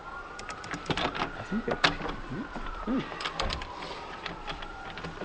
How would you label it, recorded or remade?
remade